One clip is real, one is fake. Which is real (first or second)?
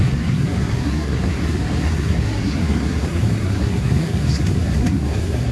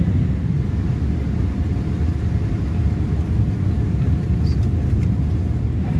second